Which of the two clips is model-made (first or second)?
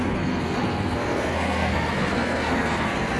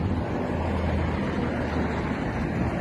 first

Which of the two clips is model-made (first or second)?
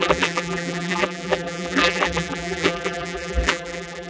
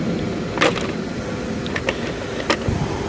first